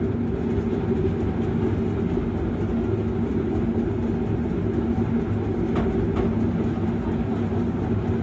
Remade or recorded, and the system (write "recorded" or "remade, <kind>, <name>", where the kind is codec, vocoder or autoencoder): recorded